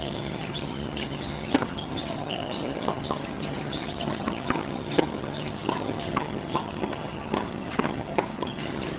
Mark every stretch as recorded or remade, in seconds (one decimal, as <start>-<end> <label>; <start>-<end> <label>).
0.0-9.0 remade